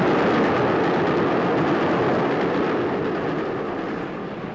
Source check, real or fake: real